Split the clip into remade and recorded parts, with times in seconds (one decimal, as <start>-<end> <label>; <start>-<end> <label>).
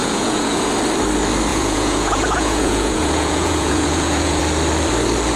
0.0-0.7 remade; 0.7-1.5 recorded; 1.5-4.4 remade; 4.4-5.4 recorded